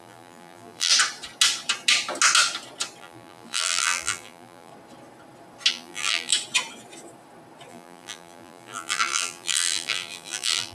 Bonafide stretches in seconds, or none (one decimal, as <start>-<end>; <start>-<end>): 0.9-3.0; 4.7-5.7; 6.3-7.7